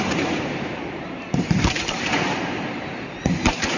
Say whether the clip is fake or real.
fake